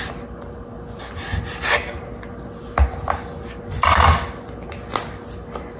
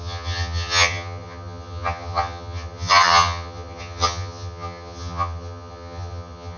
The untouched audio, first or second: first